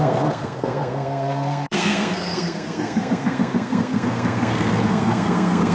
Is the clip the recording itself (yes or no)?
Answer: no